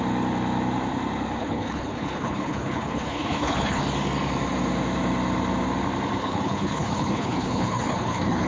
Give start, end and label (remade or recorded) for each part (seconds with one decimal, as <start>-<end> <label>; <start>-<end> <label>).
0.0-1.4 recorded; 1.4-3.8 remade; 3.8-6.2 recorded; 6.2-8.5 remade